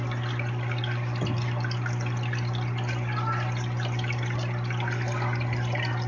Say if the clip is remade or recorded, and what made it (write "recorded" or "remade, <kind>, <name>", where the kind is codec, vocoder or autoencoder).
recorded